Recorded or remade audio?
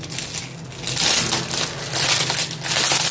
recorded